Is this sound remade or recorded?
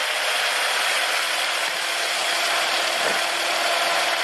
recorded